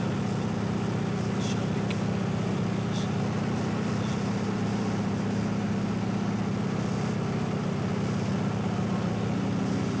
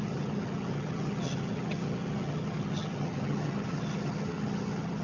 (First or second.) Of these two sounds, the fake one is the second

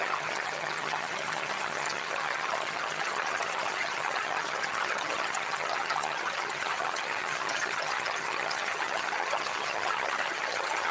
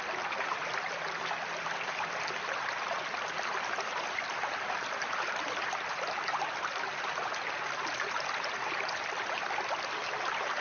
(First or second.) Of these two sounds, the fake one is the first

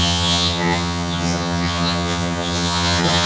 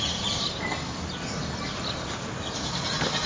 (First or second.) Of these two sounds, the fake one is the first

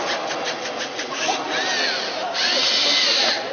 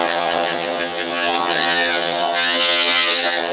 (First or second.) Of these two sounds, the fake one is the second